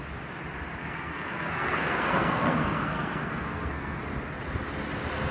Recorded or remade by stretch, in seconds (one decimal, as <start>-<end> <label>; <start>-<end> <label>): 0.0-0.8 recorded; 0.8-4.0 remade; 4.0-5.3 recorded